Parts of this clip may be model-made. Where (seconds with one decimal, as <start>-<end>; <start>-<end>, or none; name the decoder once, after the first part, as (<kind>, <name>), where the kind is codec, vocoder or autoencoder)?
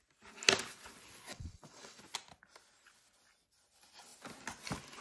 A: 1.3-2.0 (vocoder, WaveNeXt)